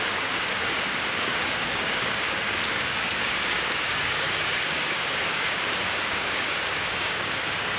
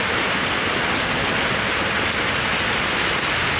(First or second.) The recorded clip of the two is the second